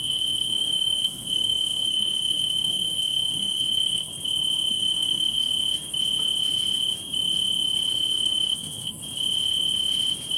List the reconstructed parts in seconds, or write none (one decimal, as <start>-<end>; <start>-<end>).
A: 0.0-4.1; 4.7-5.5; 7.9-9.0